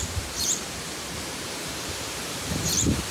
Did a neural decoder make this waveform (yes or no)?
yes